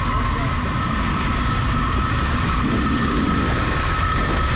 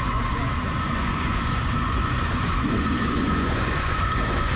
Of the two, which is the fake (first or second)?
second